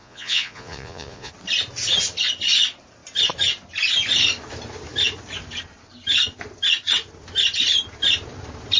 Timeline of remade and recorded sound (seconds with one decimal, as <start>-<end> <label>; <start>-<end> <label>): 0.0-1.3 remade; 1.3-8.8 recorded